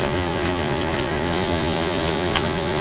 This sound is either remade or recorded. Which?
remade